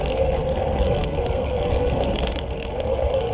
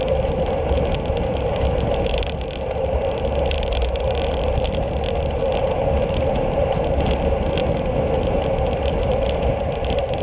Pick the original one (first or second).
second